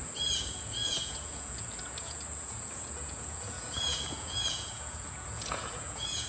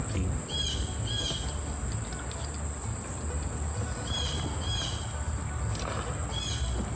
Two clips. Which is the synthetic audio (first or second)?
first